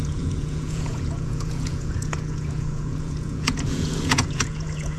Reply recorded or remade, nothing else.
remade